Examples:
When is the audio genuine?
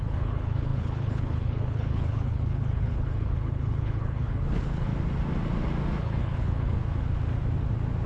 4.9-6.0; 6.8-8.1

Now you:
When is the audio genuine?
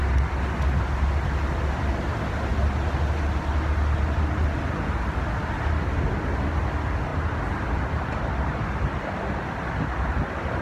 0.0-7.1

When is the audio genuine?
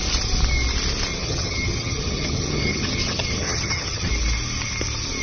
0.0-1.1; 4.1-5.2